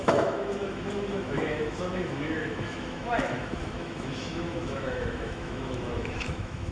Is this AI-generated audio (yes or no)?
yes